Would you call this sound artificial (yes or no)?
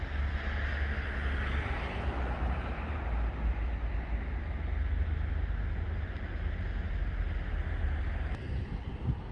no